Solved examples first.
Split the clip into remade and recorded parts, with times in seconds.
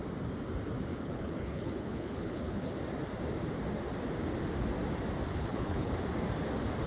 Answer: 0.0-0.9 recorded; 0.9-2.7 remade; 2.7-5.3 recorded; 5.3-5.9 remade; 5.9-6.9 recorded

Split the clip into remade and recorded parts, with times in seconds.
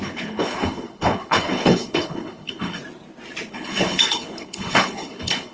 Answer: 0.0-2.8 remade; 2.8-3.5 recorded; 3.5-5.5 remade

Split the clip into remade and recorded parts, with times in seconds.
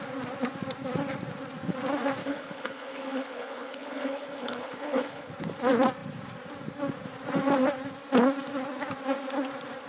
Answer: 0.0-2.2 recorded; 2.2-5.3 remade; 5.3-9.9 recorded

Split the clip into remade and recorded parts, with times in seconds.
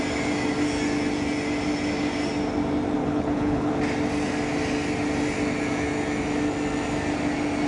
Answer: 0.0-3.0 recorded; 3.0-3.7 remade; 3.7-7.7 recorded